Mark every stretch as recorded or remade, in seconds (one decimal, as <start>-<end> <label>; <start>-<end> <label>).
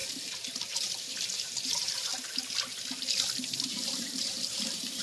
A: 0.0-2.1 remade; 2.1-3.5 recorded; 3.5-5.0 remade